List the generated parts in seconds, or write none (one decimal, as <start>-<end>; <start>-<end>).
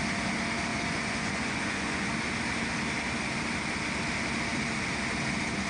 0.7-2.1